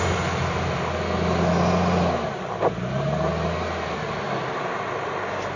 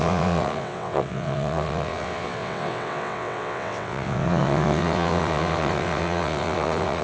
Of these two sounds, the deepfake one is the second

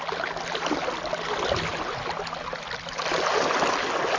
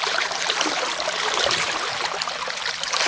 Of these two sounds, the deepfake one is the second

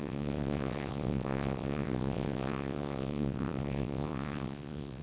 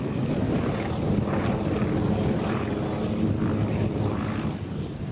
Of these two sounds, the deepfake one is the first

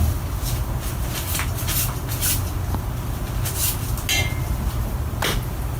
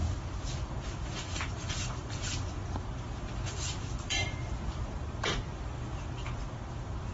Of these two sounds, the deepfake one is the second